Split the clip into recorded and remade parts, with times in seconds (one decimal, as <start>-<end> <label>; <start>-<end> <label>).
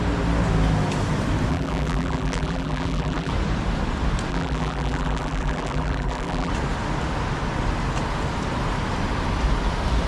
0.0-1.5 recorded; 1.5-3.3 remade; 3.3-4.3 recorded; 4.3-6.5 remade; 6.5-10.1 recorded